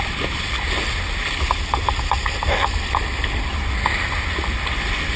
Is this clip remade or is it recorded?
recorded